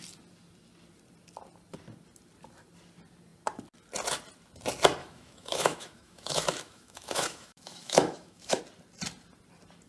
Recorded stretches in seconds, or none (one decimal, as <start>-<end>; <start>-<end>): 0.0-5.0; 8.6-9.9